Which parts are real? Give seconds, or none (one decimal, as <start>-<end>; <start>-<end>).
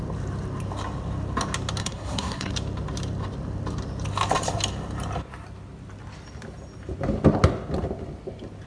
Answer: 0.0-1.8; 2.5-8.7